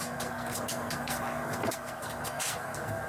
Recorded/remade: remade